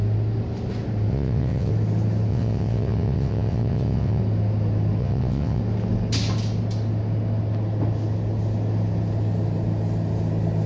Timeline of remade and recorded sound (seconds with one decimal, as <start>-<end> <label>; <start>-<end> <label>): 0.0-1.1 recorded; 1.1-1.7 remade; 1.7-2.3 recorded; 2.3-4.2 remade; 4.2-5.0 recorded; 5.0-5.6 remade; 5.6-10.7 recorded